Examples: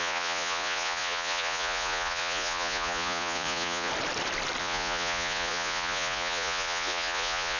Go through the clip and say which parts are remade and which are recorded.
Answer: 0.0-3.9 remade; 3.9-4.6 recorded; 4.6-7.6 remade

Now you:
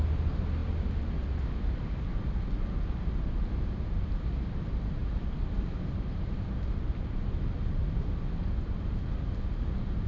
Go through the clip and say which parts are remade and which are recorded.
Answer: 0.0-10.1 recorded